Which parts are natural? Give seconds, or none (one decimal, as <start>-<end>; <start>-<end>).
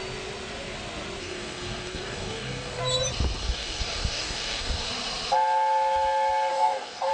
0.0-1.2; 2.8-3.4; 4.9-6.5